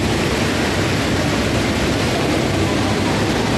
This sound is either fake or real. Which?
real